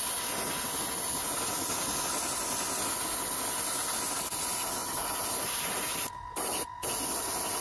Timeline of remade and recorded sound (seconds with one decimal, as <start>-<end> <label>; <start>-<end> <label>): 0.0-4.8 recorded; 4.8-7.1 remade; 7.1-7.6 recorded